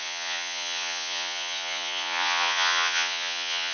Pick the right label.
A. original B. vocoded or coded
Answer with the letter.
B